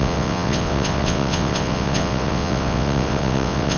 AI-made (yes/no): yes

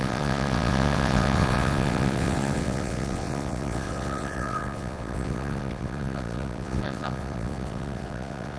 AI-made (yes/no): yes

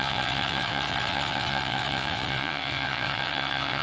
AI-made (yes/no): yes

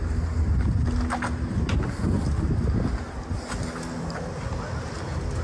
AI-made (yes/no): no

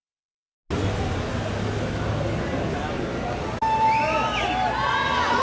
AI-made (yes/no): no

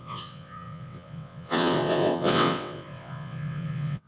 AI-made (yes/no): yes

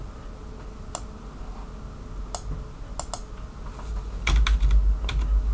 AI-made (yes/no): no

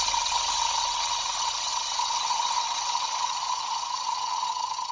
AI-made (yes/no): yes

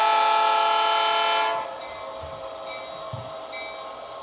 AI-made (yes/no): no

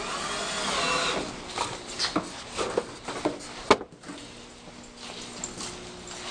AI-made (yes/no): no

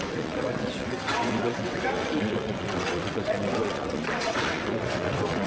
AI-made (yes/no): yes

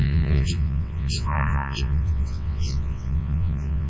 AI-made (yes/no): yes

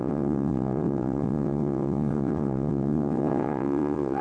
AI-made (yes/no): yes